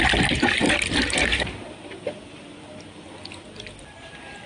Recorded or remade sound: recorded